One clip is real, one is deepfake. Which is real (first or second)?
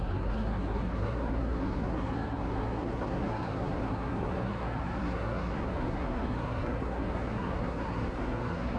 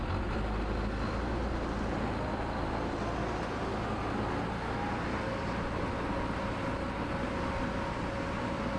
second